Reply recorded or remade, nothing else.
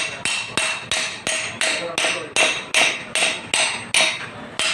recorded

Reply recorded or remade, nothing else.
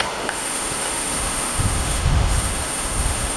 remade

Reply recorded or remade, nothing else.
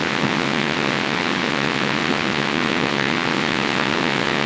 remade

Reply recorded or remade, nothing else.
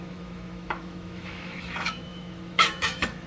remade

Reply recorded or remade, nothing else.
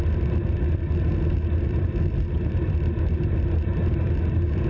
recorded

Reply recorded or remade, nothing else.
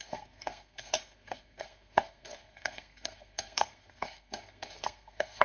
remade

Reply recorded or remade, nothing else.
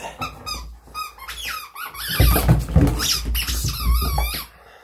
recorded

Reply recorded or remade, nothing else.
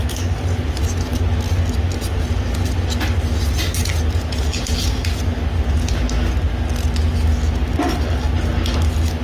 recorded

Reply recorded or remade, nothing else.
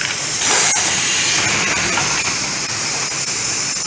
recorded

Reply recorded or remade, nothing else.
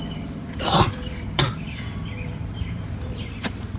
remade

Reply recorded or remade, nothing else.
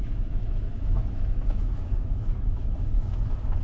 remade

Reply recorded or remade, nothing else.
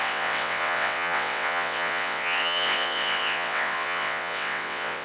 remade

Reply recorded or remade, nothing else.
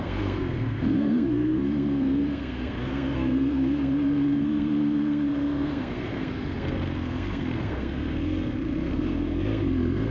remade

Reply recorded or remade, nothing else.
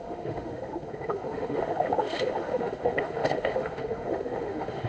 remade